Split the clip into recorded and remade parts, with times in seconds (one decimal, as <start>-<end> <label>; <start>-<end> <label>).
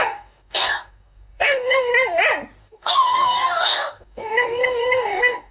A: 0.0-1.9 remade; 1.9-2.6 recorded; 2.6-5.5 remade